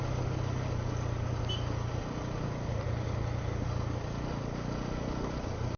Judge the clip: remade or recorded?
recorded